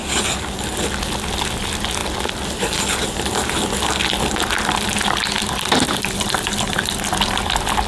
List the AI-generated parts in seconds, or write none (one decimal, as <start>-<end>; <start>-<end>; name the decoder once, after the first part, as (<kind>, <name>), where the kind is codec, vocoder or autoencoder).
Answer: none